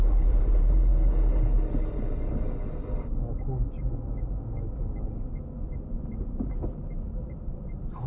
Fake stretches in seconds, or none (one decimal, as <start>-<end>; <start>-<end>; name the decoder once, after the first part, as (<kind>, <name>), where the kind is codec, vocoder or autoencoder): 0.0-0.9 (vocoder, BigVGAN v2); 5.6-8.1